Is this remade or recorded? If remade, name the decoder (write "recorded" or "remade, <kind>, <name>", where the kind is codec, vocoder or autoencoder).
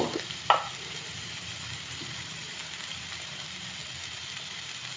recorded